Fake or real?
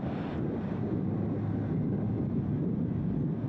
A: real